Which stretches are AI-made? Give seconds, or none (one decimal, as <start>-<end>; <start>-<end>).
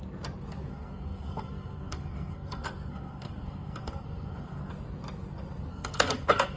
0.7-4.7; 5.7-6.6